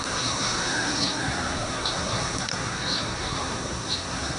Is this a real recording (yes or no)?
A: no